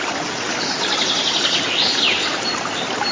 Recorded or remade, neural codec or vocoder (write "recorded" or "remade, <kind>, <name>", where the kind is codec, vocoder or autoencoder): recorded